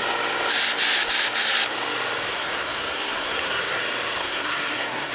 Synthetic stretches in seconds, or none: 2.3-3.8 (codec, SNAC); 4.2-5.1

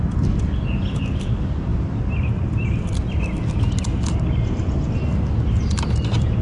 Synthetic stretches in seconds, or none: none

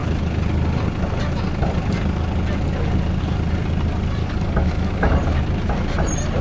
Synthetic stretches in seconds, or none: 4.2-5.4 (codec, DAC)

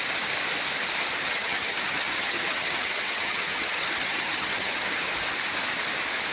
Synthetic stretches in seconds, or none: 1.2-5.0 (vocoder, HiFi-GAN)

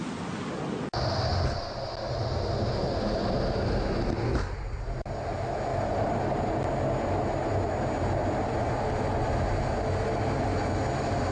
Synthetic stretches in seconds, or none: 5.7-6.4 (vocoder, BigVGAN v2)

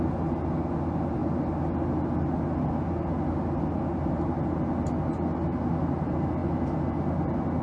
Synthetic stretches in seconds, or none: none

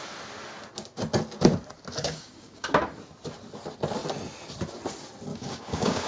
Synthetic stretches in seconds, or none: 2.0-2.8 (codec, DAC); 5.3-6.1

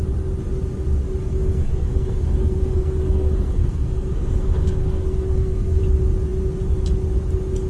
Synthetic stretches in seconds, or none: 1.2-5.8 (codec, SNAC)